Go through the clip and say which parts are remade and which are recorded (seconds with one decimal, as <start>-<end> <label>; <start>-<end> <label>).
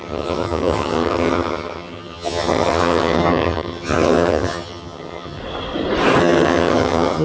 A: 0.0-5.4 remade; 5.4-6.2 recorded; 6.2-7.2 remade